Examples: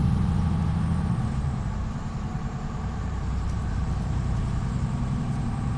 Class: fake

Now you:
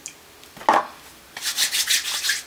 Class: real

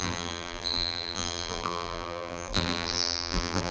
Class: fake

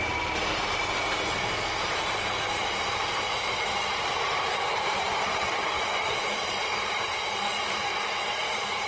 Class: fake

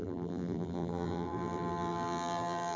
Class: fake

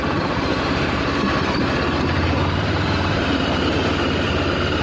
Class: fake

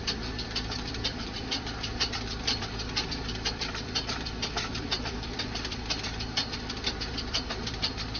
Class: fake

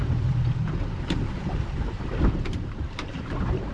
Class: fake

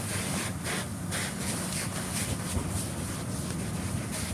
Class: real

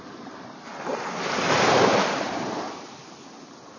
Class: real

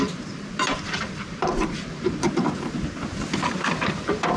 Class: fake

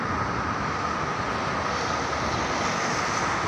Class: real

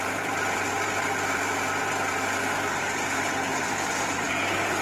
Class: fake